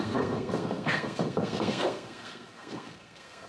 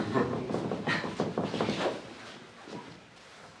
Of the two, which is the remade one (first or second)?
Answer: first